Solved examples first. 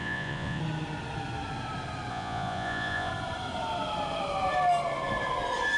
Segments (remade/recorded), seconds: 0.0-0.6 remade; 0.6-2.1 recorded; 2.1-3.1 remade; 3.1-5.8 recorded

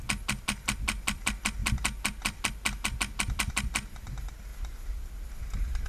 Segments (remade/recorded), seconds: 0.0-5.9 recorded

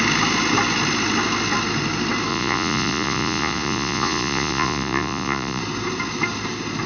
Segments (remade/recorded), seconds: 0.0-2.3 recorded; 2.3-5.6 remade; 5.6-6.9 recorded

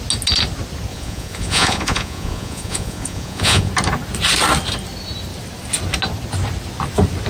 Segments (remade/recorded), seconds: 0.0-0.9 recorded; 0.9-3.7 remade; 3.7-7.3 recorded